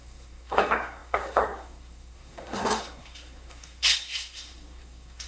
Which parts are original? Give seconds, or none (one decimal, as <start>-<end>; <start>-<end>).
none